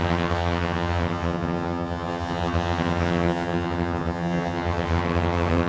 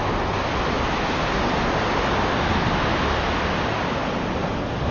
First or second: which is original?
second